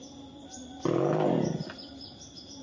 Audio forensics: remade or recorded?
recorded